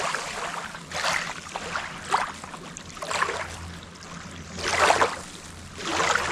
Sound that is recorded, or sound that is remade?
recorded